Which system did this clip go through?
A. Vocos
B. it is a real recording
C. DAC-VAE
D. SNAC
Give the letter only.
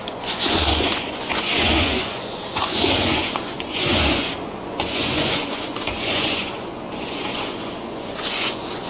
A